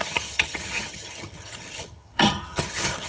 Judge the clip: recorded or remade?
remade